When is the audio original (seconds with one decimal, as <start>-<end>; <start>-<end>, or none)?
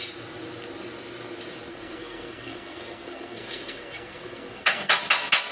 0.0-1.7; 5.0-5.5